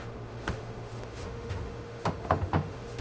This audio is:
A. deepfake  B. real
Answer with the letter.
A